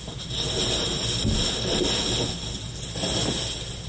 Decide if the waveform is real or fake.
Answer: real